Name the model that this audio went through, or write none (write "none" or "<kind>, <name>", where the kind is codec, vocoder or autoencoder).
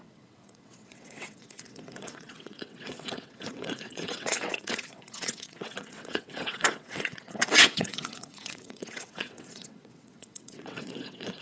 vocoder, WaveNeXt